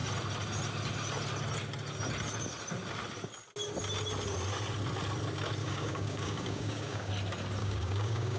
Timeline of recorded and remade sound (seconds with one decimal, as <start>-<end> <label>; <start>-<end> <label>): 0.0-5.6 recorded; 5.6-7.1 remade; 7.1-7.6 recorded; 7.6-8.4 remade